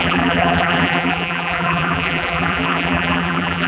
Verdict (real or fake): fake